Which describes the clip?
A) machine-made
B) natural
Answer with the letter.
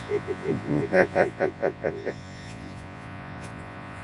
A